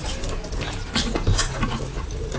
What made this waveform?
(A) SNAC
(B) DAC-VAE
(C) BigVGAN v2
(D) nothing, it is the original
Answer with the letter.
D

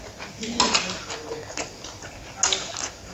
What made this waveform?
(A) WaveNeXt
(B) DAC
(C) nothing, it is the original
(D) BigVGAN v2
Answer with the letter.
C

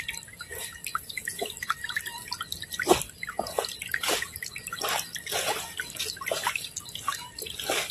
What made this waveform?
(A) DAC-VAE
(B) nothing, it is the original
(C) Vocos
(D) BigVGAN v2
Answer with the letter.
B